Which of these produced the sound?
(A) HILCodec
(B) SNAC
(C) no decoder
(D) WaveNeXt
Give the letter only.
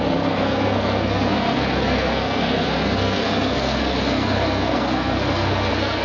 B